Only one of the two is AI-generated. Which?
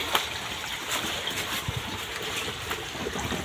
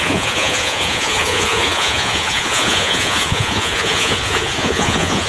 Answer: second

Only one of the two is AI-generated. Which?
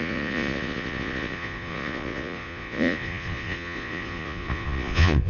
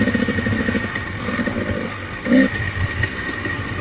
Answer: first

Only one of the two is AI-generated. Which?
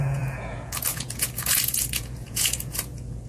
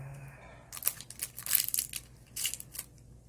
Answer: first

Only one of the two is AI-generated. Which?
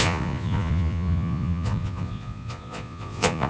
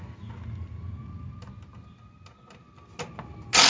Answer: first